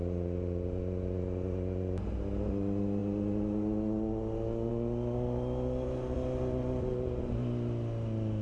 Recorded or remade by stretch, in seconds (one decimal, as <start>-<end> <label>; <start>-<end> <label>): 0.0-8.4 recorded